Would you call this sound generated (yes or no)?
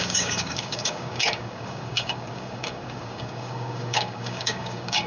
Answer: yes